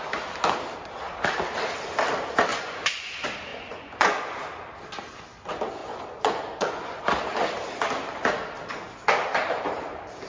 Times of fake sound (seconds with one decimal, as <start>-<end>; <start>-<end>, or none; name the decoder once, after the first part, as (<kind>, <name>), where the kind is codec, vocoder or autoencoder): 2.5-3.1 (vocoder, Vocos); 3.5-4.4; 5.8-7.0